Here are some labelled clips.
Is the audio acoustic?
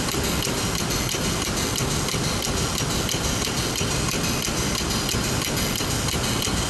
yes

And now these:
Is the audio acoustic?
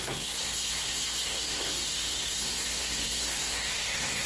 no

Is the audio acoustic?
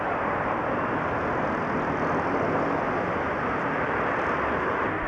yes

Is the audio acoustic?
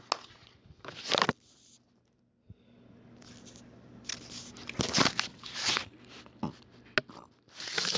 yes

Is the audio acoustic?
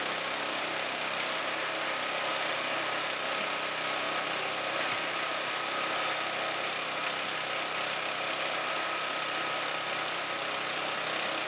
yes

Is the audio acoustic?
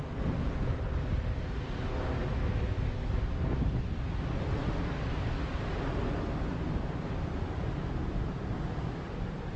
yes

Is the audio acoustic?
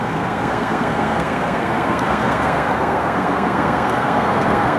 no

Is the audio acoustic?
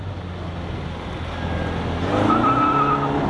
yes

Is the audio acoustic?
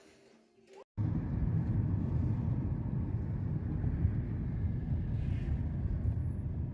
yes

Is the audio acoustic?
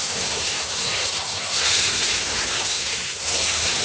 no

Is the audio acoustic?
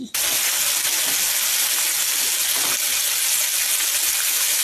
yes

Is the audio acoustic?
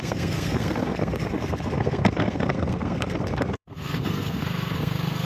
no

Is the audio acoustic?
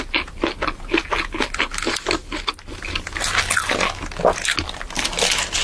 yes